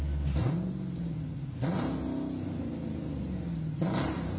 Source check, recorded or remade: recorded